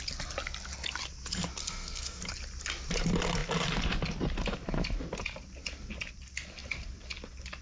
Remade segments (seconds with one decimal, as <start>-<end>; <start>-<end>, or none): 1.6-2.2